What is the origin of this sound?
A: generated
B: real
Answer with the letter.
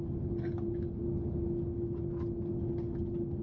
B